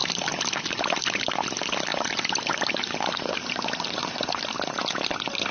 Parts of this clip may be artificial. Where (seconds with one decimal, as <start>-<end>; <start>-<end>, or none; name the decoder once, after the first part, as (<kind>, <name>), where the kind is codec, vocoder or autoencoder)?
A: none